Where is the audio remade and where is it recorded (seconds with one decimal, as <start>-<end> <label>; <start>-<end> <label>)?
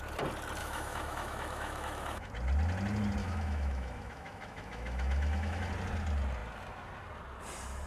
0.0-0.6 recorded; 0.6-2.3 remade; 2.3-3.2 recorded; 3.2-5.7 remade; 5.7-7.9 recorded